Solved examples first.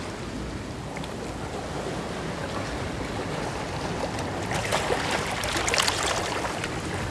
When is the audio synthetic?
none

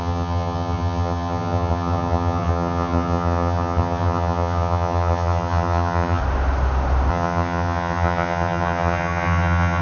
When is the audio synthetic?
0.0-6.2; 7.1-9.8